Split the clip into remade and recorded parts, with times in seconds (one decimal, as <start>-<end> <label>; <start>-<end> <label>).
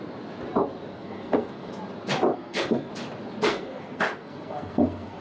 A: 0.0-0.9 recorded; 0.9-1.7 remade; 1.7-2.3 recorded; 2.3-2.9 remade; 2.9-3.5 recorded; 3.5-5.2 remade